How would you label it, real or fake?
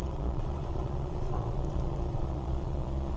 fake